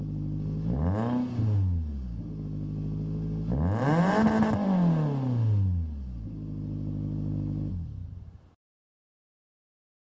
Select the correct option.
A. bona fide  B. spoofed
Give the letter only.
A